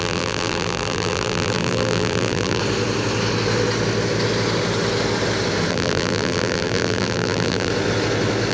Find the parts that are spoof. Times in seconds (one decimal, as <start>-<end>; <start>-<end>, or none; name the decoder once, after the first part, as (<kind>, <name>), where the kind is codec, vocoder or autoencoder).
0.0-2.6 (vocoder, BigVGAN v2); 5.7-7.7

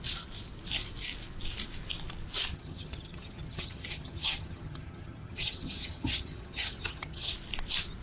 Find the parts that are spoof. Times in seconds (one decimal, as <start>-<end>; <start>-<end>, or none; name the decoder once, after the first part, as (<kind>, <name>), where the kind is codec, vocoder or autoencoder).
2.5-7.3 (vocoder, HiFi-GAN)

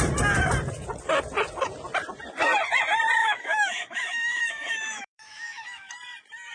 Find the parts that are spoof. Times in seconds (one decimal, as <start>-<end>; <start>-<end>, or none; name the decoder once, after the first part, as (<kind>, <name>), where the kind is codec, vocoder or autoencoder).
3.2-5.9 (autoencoder, DAC-VAE)

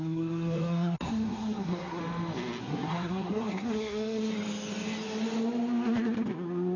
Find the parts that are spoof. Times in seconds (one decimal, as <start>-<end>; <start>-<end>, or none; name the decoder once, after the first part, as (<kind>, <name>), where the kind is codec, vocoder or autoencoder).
0.0-2.0 (codec, SNAC); 2.6-4.3

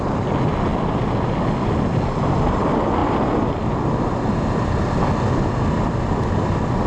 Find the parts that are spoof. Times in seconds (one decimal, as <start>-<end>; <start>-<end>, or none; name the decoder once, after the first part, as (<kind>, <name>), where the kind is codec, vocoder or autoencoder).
none

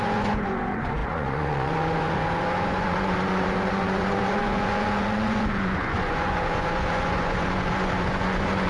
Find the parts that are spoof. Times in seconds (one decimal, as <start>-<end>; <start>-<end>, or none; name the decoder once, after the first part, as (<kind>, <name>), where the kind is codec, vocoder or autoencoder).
0.0-8.7 (vocoder, Vocos)